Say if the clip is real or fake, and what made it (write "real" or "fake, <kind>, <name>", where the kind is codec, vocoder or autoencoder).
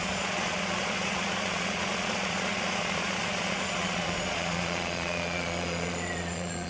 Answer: fake, vocoder, Vocos